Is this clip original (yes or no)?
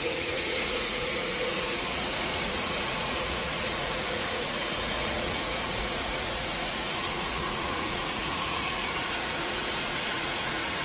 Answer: no